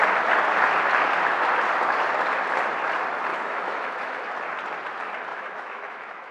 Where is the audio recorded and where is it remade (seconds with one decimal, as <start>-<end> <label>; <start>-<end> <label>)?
0.0-3.3 recorded; 3.3-4.3 remade; 4.3-5.3 recorded; 5.3-6.3 remade